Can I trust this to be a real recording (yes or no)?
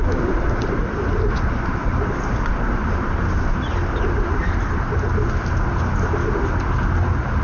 yes